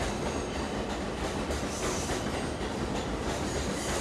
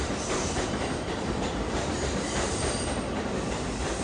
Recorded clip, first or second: first